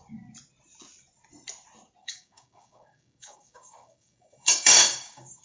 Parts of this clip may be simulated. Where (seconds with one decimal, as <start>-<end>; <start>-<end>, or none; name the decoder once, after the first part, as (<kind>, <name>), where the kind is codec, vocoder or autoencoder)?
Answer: 2.0-5.4 (codec, DAC)